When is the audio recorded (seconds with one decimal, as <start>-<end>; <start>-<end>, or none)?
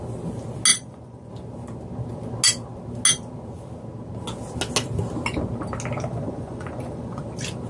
0.0-0.7; 1.3-6.1; 7.2-7.7